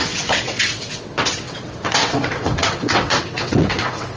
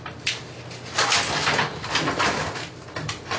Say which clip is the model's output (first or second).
first